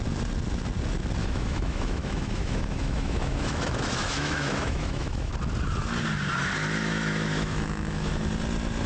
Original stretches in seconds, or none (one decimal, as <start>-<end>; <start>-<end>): 0.0-1.2; 5.3-6.9; 8.3-8.9